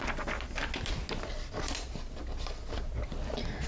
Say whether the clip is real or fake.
real